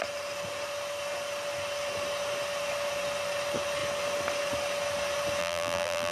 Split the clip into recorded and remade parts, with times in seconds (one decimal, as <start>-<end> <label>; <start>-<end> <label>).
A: 0.0-5.4 recorded; 5.4-6.1 remade